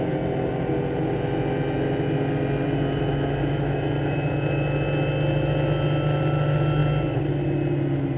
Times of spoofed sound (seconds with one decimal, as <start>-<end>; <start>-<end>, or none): none